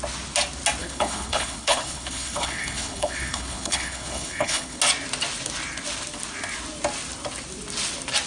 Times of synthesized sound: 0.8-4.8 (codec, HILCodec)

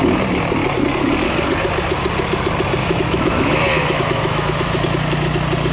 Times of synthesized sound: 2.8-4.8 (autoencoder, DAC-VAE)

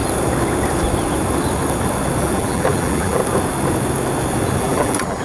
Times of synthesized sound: 2.2-3.2 (vocoder, BigVGAN v2); 4.6-5.2